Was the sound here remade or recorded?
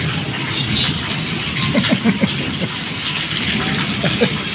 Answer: recorded